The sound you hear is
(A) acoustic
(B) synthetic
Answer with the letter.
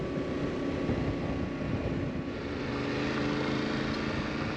A